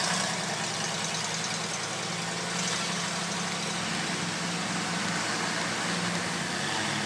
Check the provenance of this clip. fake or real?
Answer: real